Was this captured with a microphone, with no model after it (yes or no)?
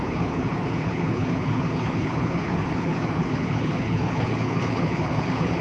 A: no